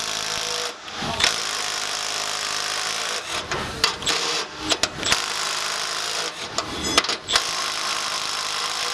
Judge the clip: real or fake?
real